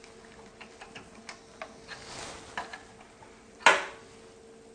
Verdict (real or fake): real